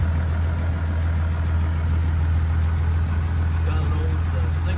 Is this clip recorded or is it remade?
recorded